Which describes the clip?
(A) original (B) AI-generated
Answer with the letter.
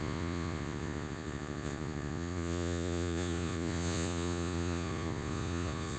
B